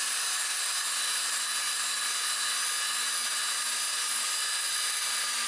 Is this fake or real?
real